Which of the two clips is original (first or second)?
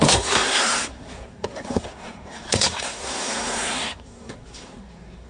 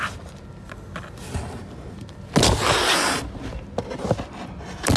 second